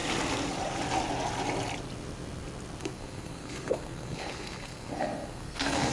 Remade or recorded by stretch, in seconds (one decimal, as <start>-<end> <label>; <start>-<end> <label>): 0.0-2.8 recorded; 2.8-5.9 remade